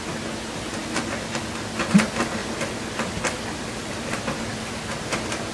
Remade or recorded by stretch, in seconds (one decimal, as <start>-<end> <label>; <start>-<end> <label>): 0.0-4.5 recorded; 4.5-5.5 remade